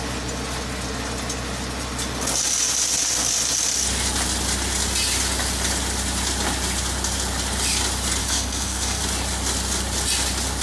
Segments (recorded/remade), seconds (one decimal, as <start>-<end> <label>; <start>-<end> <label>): 0.0-8.2 recorded; 8.2-9.0 remade; 9.0-10.6 recorded